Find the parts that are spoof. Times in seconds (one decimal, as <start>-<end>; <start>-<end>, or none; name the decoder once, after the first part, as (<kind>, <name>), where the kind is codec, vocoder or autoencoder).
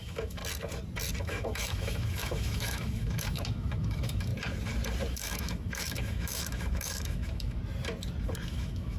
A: 0.0-0.4 (autoencoder, DAC-VAE); 1.2-4.3; 5.1-7.6; 8.5-9.0